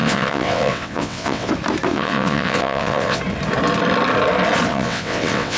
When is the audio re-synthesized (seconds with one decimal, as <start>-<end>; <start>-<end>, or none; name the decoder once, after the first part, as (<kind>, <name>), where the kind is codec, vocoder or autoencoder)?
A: 0.0-1.5 (vocoder, WaveNeXt); 1.9-3.2; 4.7-5.6